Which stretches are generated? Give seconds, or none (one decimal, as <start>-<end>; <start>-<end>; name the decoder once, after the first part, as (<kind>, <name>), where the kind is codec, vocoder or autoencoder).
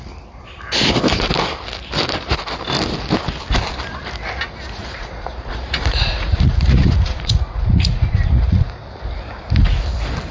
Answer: 4.8-8.7 (vocoder, Vocos)